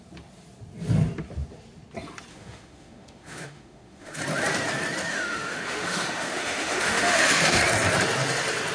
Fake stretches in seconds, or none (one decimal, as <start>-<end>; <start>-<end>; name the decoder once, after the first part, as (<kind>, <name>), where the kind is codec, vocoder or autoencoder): 2.3-4.2 (autoencoder, DAC-VAE); 5.1-7.6